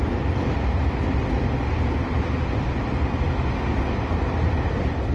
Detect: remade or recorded recorded